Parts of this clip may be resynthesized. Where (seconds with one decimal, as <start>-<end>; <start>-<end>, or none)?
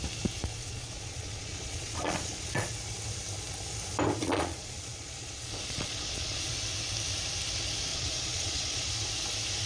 0.6-2.7; 4.2-6.5; 7.9-8.9